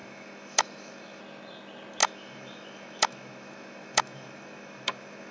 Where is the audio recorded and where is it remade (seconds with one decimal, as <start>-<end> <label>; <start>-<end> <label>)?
0.0-1.2 remade; 1.2-2.0 recorded; 2.0-5.3 remade